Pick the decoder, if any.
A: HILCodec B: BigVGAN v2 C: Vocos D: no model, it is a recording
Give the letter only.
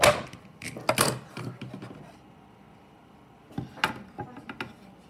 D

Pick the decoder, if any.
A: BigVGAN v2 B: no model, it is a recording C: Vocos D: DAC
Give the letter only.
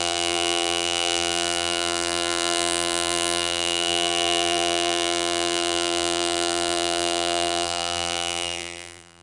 A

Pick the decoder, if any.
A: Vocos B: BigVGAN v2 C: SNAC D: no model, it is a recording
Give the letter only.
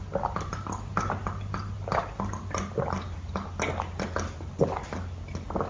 D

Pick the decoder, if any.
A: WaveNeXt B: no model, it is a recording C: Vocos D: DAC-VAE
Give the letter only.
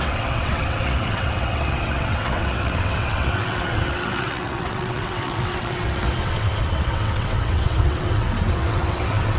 A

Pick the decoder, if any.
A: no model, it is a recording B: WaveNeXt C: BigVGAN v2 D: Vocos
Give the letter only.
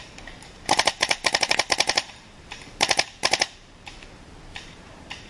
C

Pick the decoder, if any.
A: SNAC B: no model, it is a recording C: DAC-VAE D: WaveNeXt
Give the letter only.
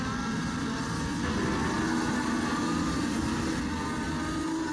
B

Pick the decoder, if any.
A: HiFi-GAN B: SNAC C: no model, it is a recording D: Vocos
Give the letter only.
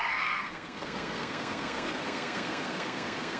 B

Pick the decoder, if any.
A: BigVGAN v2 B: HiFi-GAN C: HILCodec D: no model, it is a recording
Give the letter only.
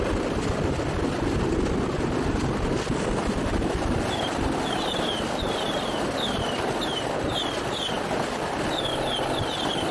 D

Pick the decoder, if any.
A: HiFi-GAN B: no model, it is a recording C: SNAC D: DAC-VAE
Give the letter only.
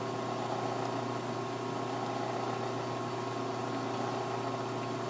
B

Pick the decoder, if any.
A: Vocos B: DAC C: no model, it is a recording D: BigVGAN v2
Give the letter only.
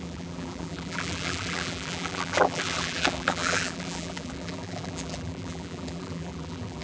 D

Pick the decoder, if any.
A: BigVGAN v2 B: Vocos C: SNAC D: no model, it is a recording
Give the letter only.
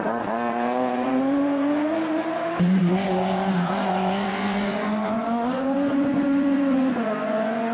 B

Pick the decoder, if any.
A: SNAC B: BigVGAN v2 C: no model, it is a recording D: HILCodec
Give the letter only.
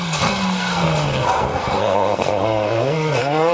A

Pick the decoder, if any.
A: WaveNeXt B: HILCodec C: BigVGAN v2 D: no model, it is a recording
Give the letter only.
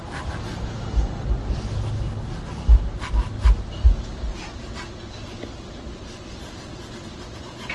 D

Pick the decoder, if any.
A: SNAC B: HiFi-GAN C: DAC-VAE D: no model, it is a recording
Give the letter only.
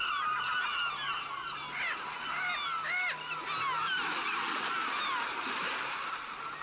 D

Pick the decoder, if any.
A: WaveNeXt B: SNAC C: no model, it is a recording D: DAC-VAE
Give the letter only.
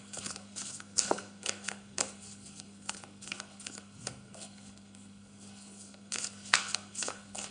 B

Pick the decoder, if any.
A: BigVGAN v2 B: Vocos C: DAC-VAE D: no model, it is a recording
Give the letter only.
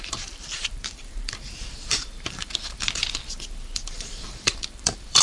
A